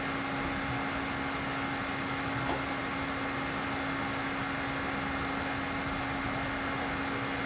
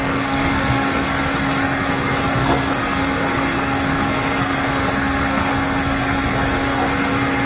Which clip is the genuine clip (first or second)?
first